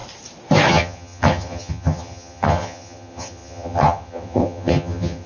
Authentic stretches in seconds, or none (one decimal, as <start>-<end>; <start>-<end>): 0.0-0.7